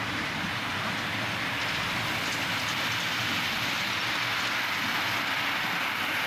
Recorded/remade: recorded